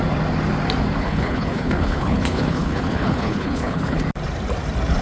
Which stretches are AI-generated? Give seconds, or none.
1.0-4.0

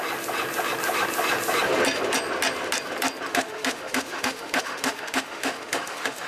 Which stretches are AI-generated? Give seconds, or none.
3.3-6.3

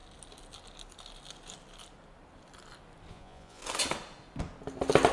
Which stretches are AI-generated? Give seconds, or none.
3.1-3.6

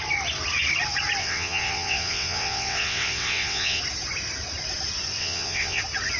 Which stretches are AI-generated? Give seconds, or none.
1.2-3.8; 5.2-5.8

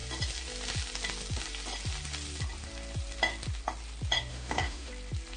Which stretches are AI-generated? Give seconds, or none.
4.3-4.9

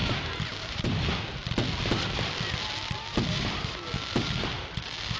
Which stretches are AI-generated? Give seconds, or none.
0.0-0.9

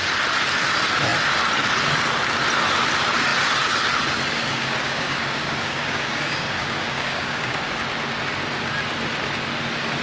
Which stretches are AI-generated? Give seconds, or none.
4.5-7.8

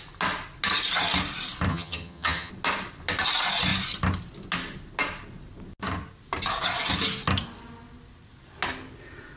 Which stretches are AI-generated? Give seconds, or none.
1.7-2.5